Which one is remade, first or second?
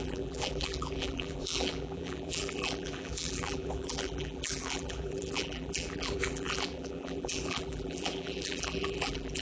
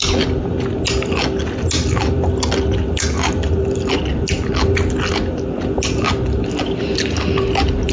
first